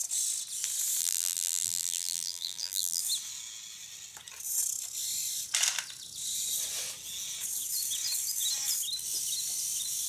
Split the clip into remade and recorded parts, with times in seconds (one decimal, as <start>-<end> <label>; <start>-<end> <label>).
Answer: 0.0-1.0 recorded; 1.0-3.0 remade; 3.0-10.1 recorded